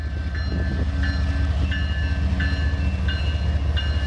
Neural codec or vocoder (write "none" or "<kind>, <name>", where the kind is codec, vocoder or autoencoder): none